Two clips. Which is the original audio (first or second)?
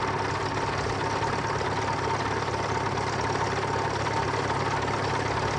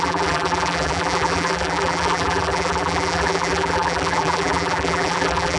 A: first